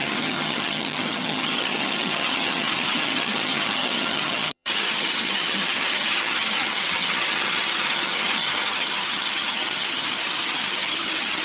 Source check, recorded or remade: remade